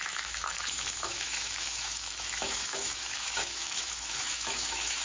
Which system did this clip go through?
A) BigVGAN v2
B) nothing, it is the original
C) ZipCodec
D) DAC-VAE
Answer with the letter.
D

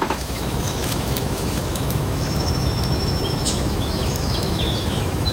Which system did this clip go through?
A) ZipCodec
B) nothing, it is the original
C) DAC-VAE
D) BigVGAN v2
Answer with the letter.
C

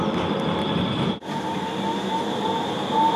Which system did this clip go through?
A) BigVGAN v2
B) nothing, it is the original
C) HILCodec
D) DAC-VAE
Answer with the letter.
B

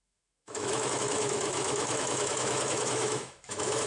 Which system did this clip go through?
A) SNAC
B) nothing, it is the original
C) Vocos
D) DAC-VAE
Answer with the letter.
D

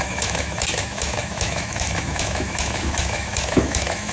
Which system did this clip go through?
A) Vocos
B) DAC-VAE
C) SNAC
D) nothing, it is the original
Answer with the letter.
B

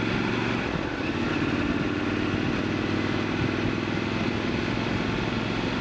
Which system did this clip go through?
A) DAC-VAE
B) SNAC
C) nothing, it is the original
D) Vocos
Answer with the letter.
C